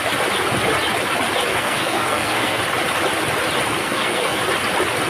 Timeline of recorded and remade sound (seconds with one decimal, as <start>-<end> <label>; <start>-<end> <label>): 0.0-1.5 recorded; 1.5-2.6 remade; 2.6-3.8 recorded; 3.8-4.4 remade; 4.4-5.1 recorded